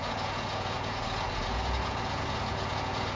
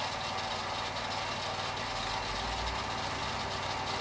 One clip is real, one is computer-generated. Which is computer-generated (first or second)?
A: first